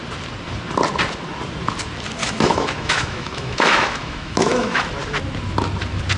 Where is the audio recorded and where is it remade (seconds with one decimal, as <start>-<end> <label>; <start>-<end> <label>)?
0.0-2.2 recorded; 2.2-4.9 remade; 4.9-6.2 recorded